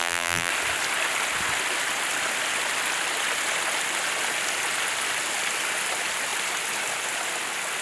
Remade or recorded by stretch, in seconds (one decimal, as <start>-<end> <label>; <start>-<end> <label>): 0.0-0.5 remade; 0.5-7.8 recorded